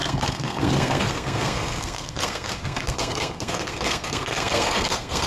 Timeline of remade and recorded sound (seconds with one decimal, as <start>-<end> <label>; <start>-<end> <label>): 0.0-5.3 remade